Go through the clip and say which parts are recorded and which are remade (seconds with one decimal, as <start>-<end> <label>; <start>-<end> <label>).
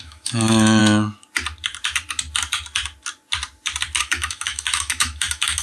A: 0.0-0.8 remade; 0.8-4.0 recorded; 4.0-5.6 remade